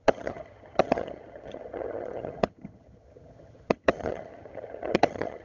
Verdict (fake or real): fake